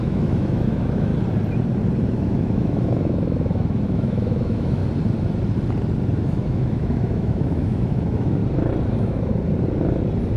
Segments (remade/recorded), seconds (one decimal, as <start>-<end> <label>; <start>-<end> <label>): 0.0-1.1 remade; 1.1-2.2 recorded; 2.2-4.8 remade; 4.8-6.2 recorded; 6.2-8.4 remade; 8.4-8.9 recorded; 8.9-9.3 remade; 9.3-10.4 recorded